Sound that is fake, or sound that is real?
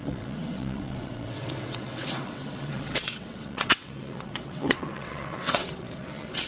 fake